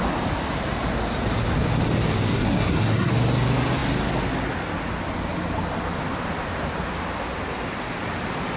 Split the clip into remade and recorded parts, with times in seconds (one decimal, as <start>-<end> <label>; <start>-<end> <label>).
0.0-2.3 recorded; 2.3-3.1 remade; 3.1-8.6 recorded